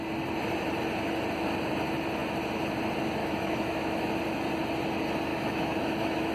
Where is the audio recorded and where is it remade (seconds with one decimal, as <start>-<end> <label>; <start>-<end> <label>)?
0.0-3.2 recorded; 3.2-4.1 remade; 4.1-5.3 recorded; 5.3-6.3 remade